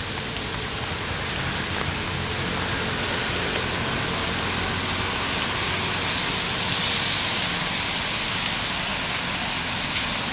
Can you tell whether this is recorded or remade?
recorded